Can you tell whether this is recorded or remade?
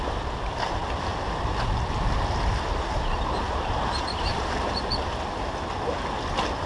recorded